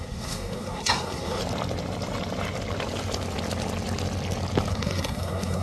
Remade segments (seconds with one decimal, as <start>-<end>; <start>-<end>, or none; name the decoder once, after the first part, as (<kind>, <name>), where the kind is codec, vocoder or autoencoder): 0.0-1.4 (codec, SNAC); 4.7-5.6